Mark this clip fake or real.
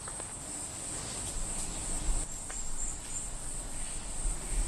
real